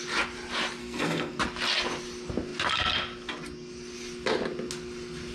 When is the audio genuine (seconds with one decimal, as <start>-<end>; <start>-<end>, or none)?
0.0-0.8; 1.4-5.3